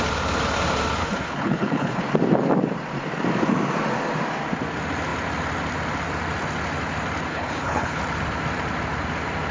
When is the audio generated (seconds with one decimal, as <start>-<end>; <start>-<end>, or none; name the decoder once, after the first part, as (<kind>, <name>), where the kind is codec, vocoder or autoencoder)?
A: 1.0-2.0 (codec, HILCodec); 7.3-8.0